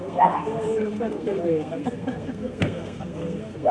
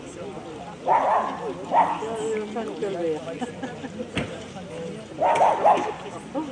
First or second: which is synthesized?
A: first